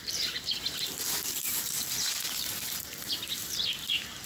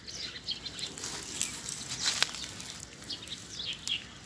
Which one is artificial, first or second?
first